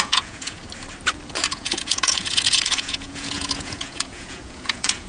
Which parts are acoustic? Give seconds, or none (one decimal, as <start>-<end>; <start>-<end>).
0.6-1.5